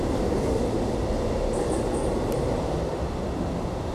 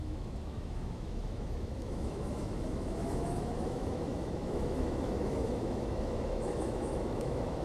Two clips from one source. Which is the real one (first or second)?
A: first